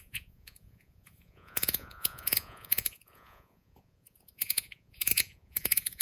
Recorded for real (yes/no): no